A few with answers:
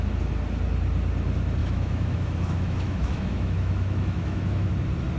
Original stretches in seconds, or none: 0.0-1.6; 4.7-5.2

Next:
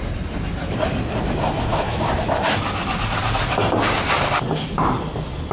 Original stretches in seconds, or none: 0.0-1.7; 2.3-5.5

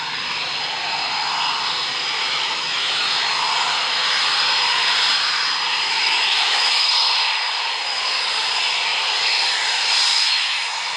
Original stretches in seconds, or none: 0.0-2.2; 3.3-6.0; 6.9-10.1

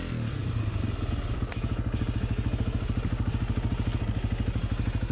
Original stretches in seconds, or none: 0.0-5.1

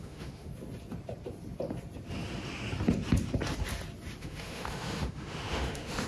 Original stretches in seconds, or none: 0.5-4.2